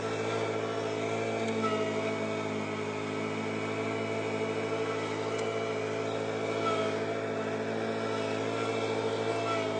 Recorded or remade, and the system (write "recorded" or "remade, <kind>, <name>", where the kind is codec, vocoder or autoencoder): recorded